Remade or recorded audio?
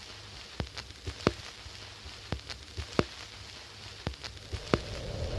recorded